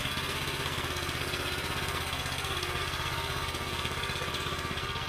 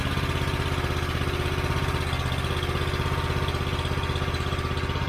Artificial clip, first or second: first